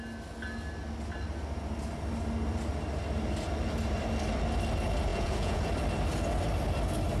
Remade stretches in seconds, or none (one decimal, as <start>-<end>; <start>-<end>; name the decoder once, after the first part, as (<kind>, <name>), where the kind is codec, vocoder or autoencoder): 5.1-5.7 (vocoder, Vocos)